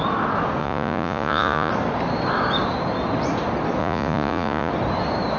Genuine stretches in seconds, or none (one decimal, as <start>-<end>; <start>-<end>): 0.0-0.6; 1.7-3.8; 4.7-5.4